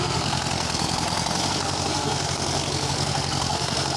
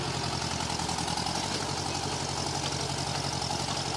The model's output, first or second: first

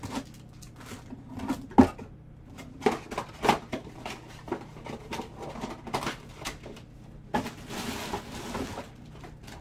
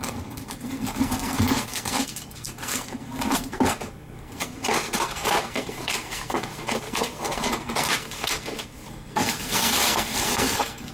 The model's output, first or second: second